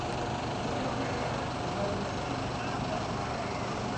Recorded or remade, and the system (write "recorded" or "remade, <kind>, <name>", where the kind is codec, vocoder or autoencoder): recorded